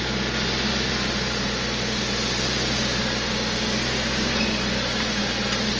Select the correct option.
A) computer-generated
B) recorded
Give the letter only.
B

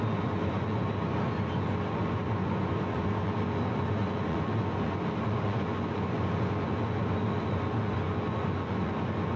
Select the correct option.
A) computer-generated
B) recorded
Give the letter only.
A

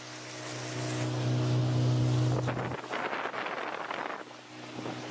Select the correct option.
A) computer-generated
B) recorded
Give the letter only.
B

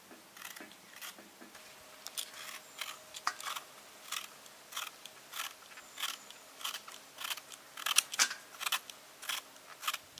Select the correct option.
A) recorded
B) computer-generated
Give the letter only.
A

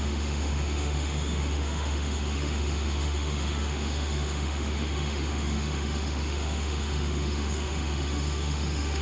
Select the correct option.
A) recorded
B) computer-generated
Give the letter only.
B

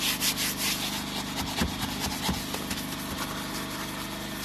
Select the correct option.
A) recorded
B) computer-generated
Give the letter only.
A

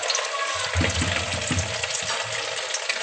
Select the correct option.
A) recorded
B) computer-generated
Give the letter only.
A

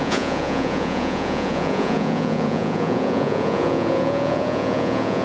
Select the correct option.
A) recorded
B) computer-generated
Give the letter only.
B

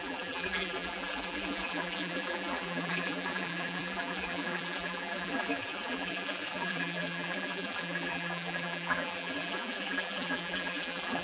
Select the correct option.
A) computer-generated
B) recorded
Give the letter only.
A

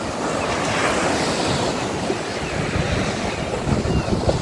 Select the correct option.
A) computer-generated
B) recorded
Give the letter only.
B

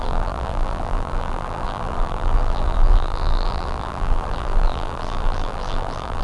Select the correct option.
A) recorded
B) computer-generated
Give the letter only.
B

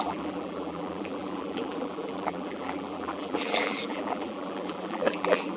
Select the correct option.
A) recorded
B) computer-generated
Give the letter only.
B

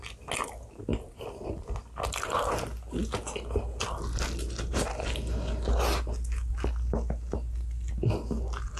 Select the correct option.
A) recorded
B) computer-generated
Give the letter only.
A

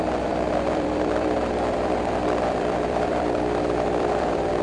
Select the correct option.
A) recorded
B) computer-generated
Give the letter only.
B